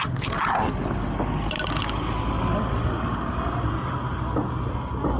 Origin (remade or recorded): recorded